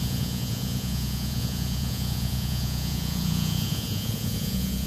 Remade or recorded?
remade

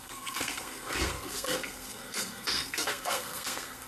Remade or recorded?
remade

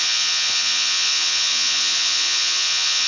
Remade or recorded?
remade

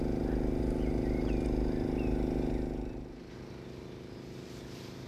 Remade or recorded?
recorded